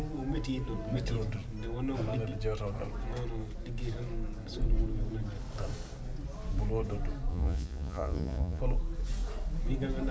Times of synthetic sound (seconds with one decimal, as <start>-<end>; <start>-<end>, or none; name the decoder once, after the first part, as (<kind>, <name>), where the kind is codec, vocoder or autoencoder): 7.3-8.6 (vocoder, Vocos)